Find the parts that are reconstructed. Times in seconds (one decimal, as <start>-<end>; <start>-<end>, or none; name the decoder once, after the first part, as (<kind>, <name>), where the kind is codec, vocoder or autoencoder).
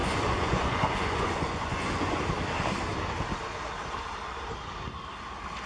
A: 0.0-2.2 (vocoder, Vocos)